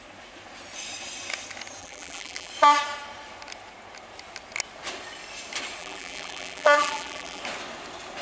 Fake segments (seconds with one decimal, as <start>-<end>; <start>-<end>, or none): 1.8-2.5; 5.8-7.4